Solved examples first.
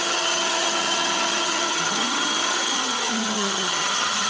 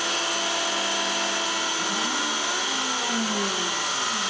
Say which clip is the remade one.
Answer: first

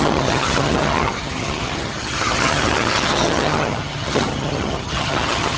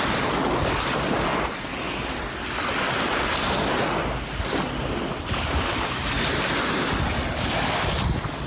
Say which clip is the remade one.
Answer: first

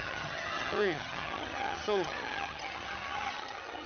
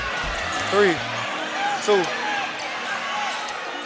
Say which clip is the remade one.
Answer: first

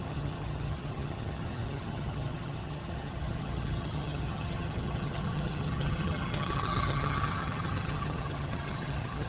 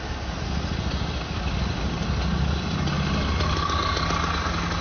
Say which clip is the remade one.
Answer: first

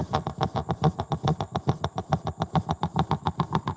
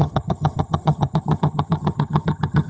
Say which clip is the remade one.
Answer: second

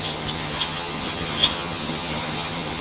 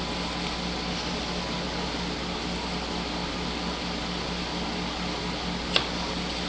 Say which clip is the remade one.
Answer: first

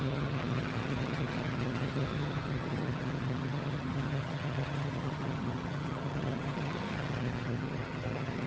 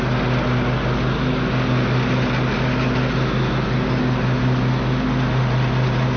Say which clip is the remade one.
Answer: first